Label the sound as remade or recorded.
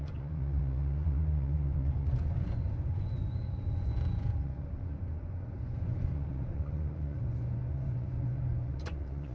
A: remade